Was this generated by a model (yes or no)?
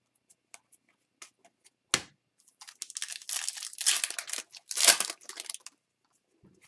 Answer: no